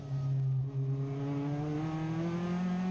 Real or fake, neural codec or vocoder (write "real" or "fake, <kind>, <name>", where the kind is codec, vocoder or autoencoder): real